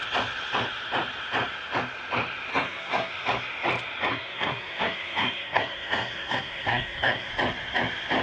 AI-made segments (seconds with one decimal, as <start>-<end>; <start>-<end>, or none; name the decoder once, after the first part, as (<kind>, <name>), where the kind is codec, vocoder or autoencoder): 2.5-3.1 (codec, SNAC); 4.1-7.3